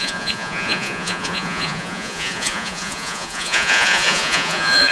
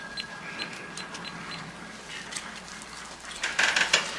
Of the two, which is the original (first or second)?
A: second